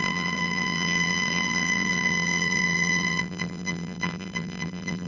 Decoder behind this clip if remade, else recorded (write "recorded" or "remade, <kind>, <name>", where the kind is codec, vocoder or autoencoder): remade, vocoder, BigVGAN v2